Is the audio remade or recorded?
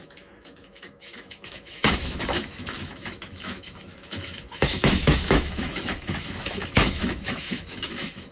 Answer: remade